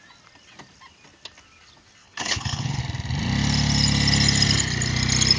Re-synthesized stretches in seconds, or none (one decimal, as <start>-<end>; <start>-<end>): 2.0-2.8